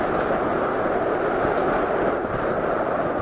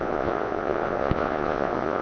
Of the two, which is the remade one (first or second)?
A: second